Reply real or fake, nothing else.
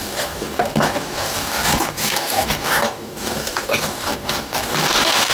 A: fake